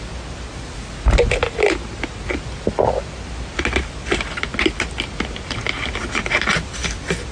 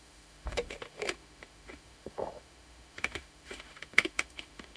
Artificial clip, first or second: second